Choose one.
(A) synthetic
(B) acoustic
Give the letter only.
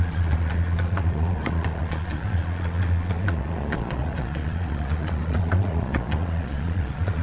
A